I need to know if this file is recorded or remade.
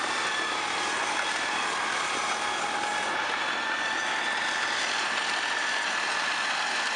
recorded